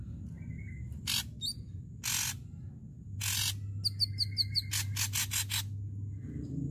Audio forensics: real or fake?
real